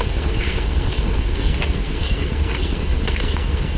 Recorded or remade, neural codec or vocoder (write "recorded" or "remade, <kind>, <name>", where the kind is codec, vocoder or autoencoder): remade, codec, SNAC